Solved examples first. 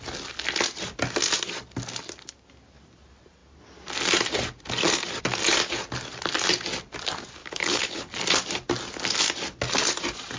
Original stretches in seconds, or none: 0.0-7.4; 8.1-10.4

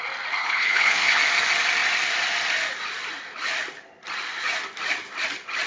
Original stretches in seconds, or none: 0.0-0.4; 1.2-5.7

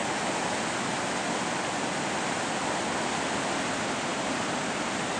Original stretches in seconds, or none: 0.0-5.2

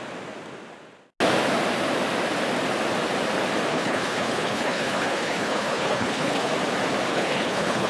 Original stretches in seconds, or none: 0.0-3.7; 6.5-7.1

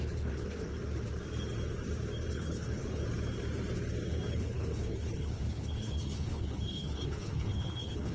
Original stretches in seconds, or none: 0.7-2.3; 3.0-4.3

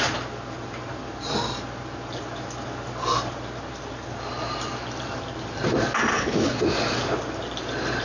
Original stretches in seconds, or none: 0.0-6.1; 6.6-8.0